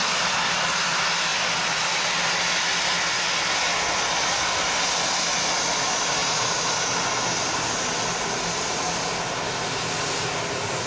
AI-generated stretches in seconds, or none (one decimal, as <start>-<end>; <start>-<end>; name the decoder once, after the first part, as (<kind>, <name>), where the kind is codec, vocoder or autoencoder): none